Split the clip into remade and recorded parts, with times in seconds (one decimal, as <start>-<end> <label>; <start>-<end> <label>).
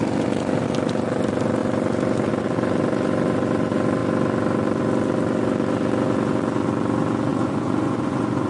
0.0-7.3 recorded; 7.3-8.5 remade